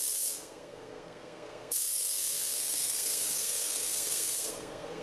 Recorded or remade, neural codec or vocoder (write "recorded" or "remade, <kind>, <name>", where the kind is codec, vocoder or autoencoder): remade, codec, SNAC